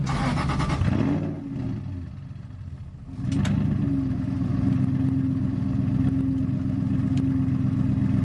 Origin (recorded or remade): recorded